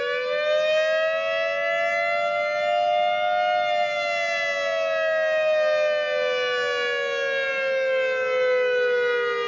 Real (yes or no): yes